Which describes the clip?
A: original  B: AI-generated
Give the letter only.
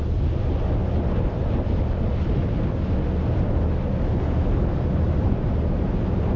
A